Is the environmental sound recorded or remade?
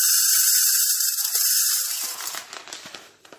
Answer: remade